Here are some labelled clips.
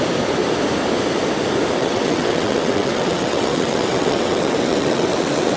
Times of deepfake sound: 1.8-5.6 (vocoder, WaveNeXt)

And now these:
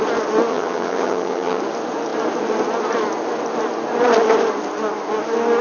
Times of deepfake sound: 0.5-1.6 (vocoder, HiFi-GAN)